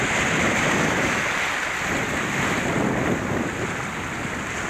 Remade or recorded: recorded